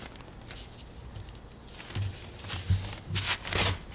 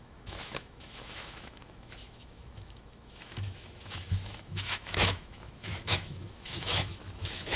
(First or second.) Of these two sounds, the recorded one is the first